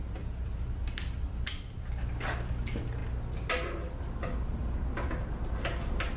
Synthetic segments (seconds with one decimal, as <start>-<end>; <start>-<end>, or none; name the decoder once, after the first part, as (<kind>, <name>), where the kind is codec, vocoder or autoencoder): none